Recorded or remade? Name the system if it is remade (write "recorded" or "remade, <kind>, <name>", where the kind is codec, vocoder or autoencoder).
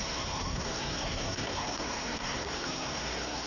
remade, codec, SNAC